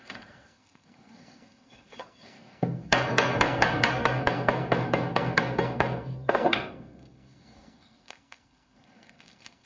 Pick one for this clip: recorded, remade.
remade